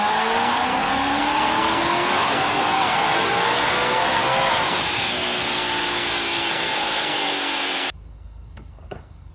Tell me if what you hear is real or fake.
fake